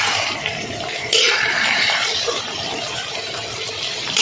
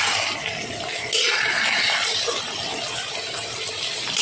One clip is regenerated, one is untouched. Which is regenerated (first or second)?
first